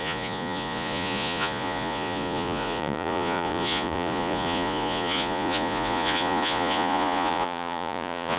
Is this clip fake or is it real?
fake